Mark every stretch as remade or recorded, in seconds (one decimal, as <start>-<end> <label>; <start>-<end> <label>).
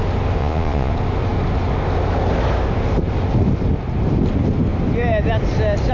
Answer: 0.0-0.4 recorded; 0.4-0.9 remade; 0.9-5.9 recorded